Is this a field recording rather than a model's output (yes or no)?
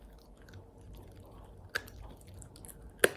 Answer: yes